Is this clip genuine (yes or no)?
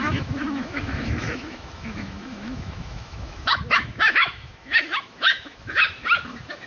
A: no